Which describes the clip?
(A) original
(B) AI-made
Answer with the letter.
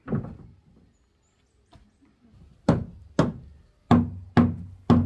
A